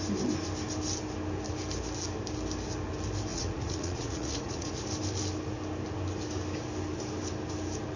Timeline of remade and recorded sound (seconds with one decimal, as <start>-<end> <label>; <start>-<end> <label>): 0.0-3.3 recorded; 3.3-4.7 remade; 4.7-8.0 recorded

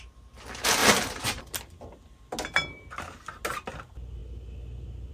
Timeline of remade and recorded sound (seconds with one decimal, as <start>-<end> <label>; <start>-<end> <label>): 0.0-0.8 recorded; 0.8-1.7 remade; 1.7-5.1 recorded

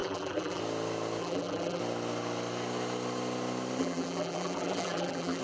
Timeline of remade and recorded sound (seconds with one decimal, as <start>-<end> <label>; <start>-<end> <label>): 0.0-0.6 remade; 0.6-1.2 recorded; 1.2-1.8 remade; 1.8-3.8 recorded; 3.8-5.4 remade

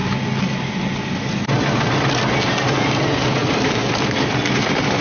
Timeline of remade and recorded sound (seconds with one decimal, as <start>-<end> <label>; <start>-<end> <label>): 0.0-5.0 recorded

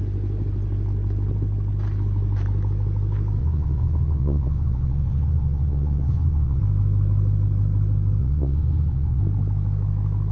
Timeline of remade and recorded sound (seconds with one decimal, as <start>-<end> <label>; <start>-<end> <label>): 0.0-3.4 recorded; 3.4-6.6 remade; 6.6-8.2 recorded; 8.2-9.2 remade; 9.2-10.3 recorded

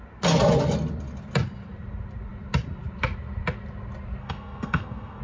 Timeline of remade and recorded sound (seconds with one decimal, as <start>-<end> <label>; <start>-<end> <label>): 0.0-4.2 recorded; 4.2-5.2 remade